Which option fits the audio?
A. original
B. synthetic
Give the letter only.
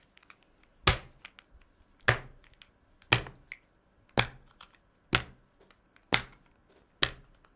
A